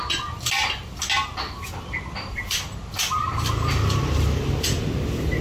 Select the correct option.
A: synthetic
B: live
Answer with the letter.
B